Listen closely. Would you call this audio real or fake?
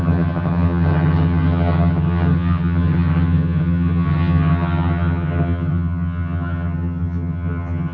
fake